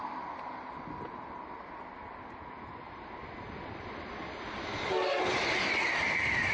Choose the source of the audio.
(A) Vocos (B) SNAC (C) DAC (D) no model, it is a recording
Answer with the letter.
D